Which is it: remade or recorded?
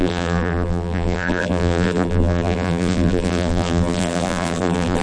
remade